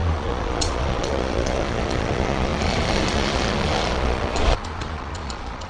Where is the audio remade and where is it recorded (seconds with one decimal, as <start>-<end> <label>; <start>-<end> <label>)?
0.0-5.7 remade